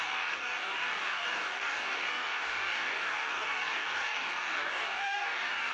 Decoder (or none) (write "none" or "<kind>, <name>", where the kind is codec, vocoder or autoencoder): codec, DAC